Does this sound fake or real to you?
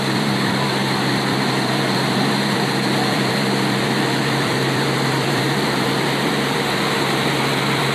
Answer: fake